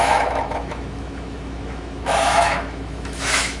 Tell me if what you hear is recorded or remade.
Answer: remade